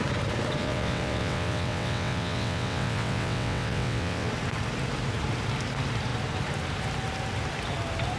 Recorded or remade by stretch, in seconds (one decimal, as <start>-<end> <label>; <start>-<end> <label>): 0.0-0.6 recorded; 0.6-4.3 remade; 4.3-8.2 recorded